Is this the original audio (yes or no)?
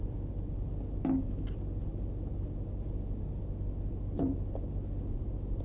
yes